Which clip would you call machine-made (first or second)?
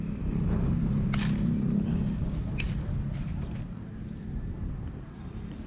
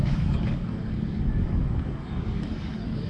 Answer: second